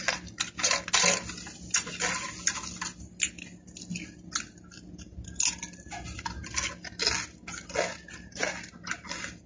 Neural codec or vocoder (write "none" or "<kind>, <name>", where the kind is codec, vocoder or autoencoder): none